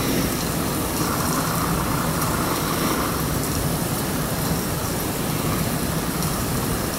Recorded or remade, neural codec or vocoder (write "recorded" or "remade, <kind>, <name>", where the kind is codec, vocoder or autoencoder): remade, vocoder, BigVGAN v2